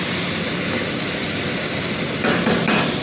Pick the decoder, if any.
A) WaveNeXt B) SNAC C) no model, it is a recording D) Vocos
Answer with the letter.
C